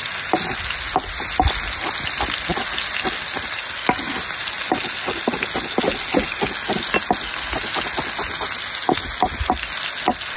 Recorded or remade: recorded